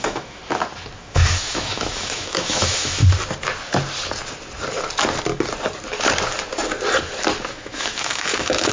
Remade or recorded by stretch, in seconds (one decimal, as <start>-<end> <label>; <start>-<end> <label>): 0.0-0.4 remade; 0.4-1.0 recorded; 1.0-3.0 remade; 3.0-7.5 recorded; 7.5-8.7 remade